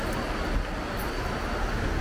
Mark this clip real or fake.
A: real